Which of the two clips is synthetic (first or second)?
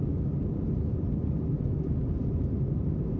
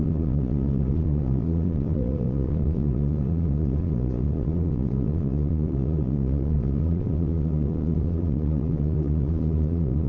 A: second